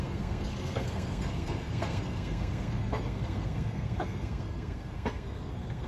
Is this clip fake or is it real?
fake